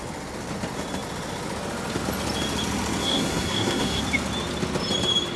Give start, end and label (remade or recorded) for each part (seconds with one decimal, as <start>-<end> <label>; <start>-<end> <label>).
0.0-3.0 recorded; 3.0-4.0 remade; 4.0-5.4 recorded